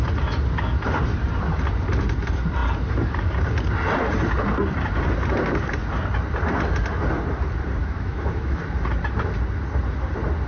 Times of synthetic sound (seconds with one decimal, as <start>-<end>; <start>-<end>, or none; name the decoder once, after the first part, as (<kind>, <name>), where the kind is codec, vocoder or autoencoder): 7.8-8.6 (autoencoder, DAC-VAE)